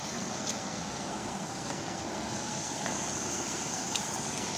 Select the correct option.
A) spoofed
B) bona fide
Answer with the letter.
A